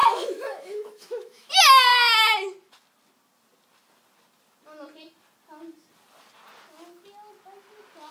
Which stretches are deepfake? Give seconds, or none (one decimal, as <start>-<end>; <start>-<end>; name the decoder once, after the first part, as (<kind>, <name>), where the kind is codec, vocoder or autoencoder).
0.0-1.5 (autoencoder, DAC-VAE)